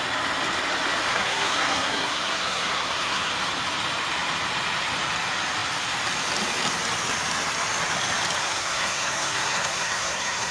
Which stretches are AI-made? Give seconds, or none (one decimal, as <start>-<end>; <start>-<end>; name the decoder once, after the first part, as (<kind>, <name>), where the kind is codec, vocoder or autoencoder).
1.1-3.3 (codec, SNAC); 8.4-10.5